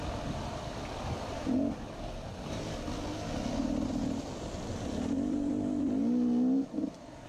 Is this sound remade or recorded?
recorded